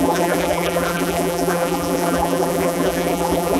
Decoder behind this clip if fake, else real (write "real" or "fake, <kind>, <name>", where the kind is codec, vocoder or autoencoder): fake, vocoder, BigVGAN v2